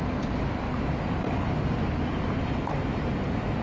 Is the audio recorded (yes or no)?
yes